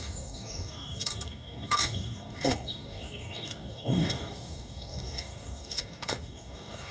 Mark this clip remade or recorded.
remade